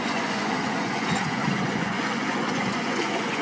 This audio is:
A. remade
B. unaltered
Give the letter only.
A